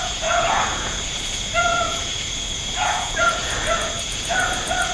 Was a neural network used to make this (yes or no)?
yes